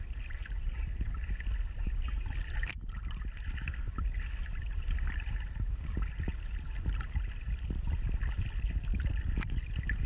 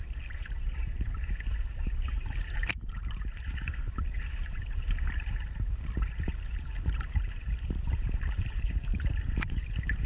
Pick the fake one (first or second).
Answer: second